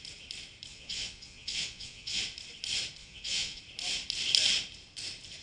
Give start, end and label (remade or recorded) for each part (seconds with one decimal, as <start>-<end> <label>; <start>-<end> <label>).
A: 0.0-0.7 recorded; 0.7-2.2 remade; 2.2-3.0 recorded; 3.0-3.6 remade; 3.6-5.4 recorded